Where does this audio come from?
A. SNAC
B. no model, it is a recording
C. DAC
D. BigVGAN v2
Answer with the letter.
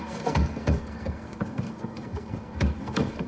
A